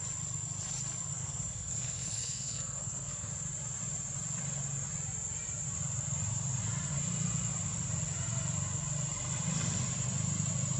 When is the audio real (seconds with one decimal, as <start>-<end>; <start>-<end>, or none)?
0.0-1.1; 3.3-10.8